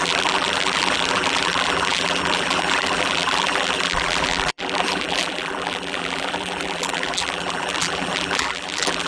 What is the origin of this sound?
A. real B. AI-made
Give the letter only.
B